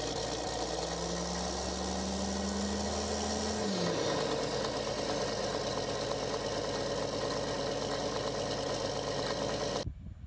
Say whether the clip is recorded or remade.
recorded